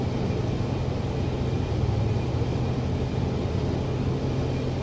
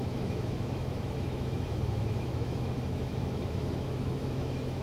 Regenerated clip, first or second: second